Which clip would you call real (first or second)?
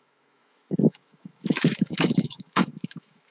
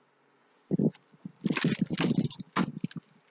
second